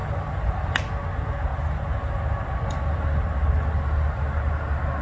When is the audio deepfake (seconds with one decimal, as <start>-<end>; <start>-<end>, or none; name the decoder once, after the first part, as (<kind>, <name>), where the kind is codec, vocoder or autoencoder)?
none